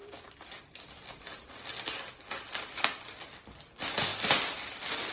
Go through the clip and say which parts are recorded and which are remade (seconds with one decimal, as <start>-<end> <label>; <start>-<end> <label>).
0.0-5.1 recorded